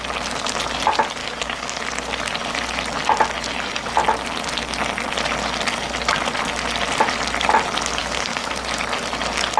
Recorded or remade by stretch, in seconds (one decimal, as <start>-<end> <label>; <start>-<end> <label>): 0.0-1.2 recorded; 1.2-1.8 remade; 1.8-8.0 recorded; 8.0-8.5 remade; 8.5-9.6 recorded